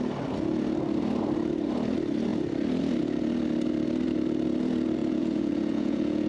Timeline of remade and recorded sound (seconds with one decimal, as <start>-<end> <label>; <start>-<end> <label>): 0.0-5.0 recorded; 5.0-6.3 remade

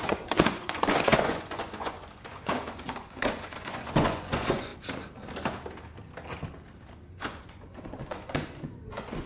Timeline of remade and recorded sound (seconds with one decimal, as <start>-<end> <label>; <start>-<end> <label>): 0.0-4.7 remade; 4.7-7.1 recorded; 7.1-9.3 remade

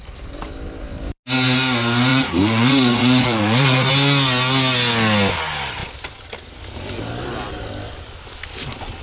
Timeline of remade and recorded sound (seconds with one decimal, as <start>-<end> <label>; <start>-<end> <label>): 0.0-2.1 recorded; 2.1-3.9 remade; 3.9-9.0 recorded

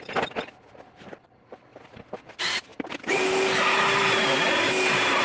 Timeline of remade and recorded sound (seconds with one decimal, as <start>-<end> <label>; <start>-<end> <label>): 0.0-5.2 recorded